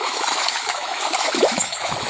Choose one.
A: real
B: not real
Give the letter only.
B